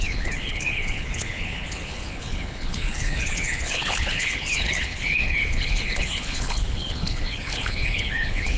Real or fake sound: fake